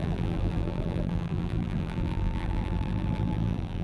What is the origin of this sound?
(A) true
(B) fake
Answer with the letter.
B